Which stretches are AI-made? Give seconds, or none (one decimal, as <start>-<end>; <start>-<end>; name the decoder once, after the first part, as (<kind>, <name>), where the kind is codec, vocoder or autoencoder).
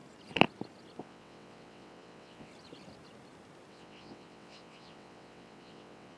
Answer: 1.0-2.5 (vocoder, WaveNeXt); 3.7-6.2